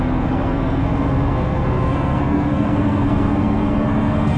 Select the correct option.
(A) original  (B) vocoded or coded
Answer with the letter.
B